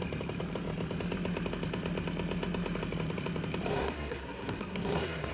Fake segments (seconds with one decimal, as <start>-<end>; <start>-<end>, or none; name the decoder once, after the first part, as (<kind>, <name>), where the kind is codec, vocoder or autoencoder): 3.7-5.3 (codec, SNAC)